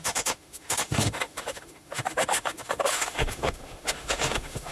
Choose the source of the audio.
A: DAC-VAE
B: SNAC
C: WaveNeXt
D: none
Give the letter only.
A